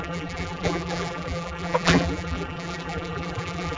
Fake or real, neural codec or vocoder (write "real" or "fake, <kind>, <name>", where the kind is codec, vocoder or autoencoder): fake, vocoder, BigVGAN v2